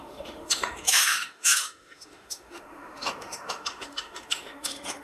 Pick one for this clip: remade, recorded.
remade